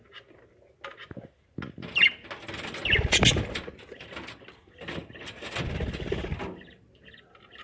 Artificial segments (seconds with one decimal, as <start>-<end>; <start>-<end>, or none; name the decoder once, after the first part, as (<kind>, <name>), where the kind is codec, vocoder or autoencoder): none